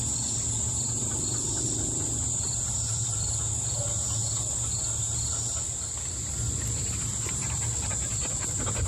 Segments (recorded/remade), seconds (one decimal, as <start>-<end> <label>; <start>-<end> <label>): 0.0-4.2 remade; 4.2-5.0 recorded; 5.0-8.9 remade